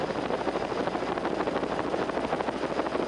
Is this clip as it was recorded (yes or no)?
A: yes